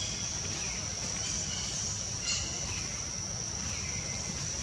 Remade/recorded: recorded